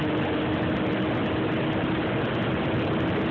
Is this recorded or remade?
recorded